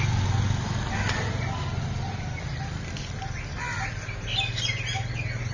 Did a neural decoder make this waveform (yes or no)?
no